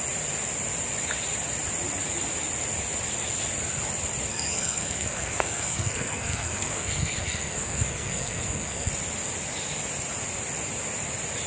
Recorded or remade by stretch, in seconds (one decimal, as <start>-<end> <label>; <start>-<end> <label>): 0.0-4.3 recorded; 4.3-8.9 remade; 8.9-11.5 recorded